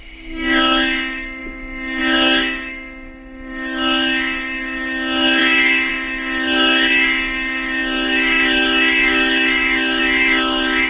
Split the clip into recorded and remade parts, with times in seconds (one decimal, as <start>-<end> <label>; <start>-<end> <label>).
0.0-10.9 remade